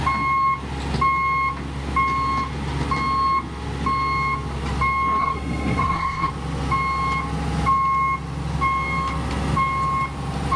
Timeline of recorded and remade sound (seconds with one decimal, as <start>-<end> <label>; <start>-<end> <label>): 0.0-5.2 recorded; 5.2-6.3 remade; 6.3-10.6 recorded

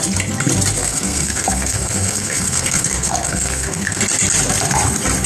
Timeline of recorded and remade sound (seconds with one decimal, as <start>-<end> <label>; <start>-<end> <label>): 0.0-0.8 recorded; 0.8-4.0 remade; 4.0-5.3 recorded